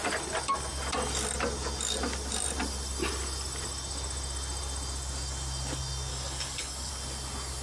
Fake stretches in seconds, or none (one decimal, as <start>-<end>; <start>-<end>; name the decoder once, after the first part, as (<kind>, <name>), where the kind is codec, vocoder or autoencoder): 6.1-6.9 (codec, DAC)